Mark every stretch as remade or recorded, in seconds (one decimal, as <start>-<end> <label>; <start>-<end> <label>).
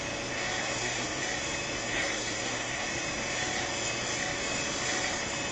0.0-0.6 recorded; 0.6-1.2 remade; 1.2-1.8 recorded; 1.8-2.8 remade; 2.8-5.5 recorded